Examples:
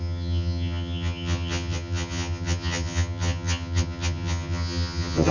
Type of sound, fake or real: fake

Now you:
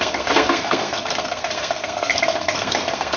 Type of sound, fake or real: fake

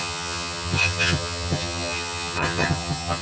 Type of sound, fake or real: fake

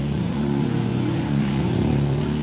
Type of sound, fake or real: fake